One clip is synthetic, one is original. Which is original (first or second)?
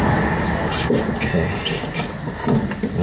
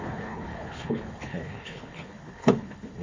first